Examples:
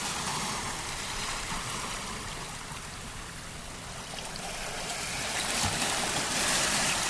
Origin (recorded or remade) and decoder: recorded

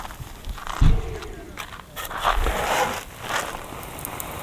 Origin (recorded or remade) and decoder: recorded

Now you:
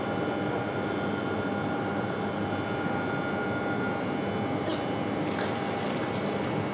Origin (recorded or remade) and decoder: recorded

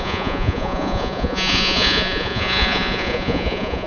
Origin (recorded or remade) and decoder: remade, vocoder, Vocos